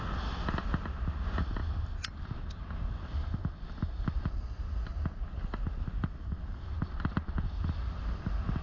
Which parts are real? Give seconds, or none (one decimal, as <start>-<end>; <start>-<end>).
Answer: 0.0-8.6